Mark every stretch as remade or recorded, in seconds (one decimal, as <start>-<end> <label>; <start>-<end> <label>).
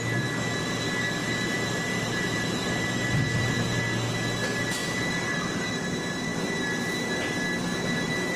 0.0-1.2 recorded; 1.2-3.8 remade; 3.8-4.8 recorded; 4.8-5.7 remade; 5.7-8.4 recorded